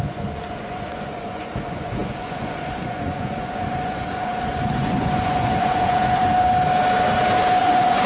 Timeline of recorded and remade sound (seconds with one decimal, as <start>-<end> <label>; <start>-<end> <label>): 0.0-6.3 remade; 6.3-7.6 recorded; 7.6-8.1 remade